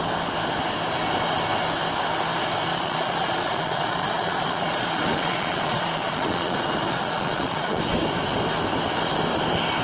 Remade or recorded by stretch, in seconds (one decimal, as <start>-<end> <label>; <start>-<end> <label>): 0.0-2.7 recorded; 2.7-7.8 remade; 7.8-9.8 recorded